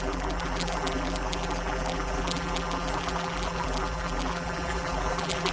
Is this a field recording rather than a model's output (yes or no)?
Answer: no